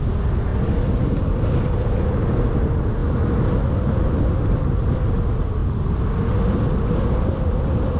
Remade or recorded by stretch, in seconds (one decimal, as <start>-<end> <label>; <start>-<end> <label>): 0.0-0.5 recorded; 0.5-1.8 remade; 1.8-8.0 recorded